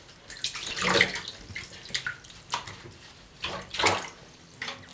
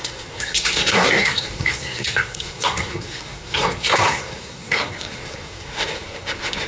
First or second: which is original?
first